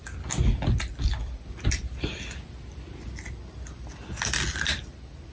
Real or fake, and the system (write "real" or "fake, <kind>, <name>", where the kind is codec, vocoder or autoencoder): real